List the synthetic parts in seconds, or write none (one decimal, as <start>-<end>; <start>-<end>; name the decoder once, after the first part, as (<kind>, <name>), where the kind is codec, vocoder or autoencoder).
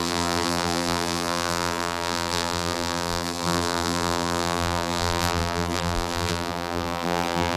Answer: 0.0-7.6 (vocoder, BigVGAN v2)